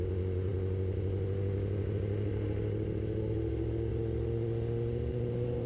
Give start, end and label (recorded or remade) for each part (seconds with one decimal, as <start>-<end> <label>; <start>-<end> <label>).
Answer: 0.0-5.1 recorded; 5.1-5.7 remade